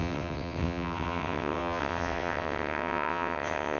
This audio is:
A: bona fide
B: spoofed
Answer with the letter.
B